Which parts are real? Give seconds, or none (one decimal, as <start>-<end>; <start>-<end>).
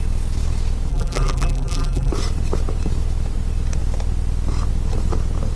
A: 0.0-0.9; 2.1-5.6